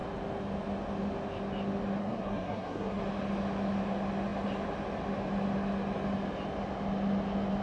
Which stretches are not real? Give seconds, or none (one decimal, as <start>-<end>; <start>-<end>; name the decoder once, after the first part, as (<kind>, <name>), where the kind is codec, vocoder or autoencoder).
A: 2.0-3.0 (codec, SNAC)